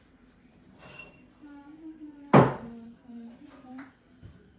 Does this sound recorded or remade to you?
remade